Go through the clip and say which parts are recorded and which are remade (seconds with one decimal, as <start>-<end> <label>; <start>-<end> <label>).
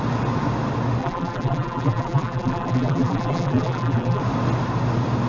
0.0-1.0 recorded; 1.0-4.2 remade; 4.2-5.3 recorded